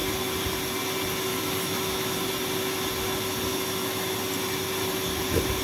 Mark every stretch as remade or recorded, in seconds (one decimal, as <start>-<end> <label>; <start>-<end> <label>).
0.0-1.3 recorded; 1.3-2.3 remade; 2.3-3.5 recorded; 3.5-4.1 remade; 4.1-5.6 recorded